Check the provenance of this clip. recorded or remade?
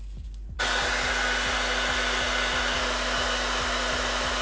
recorded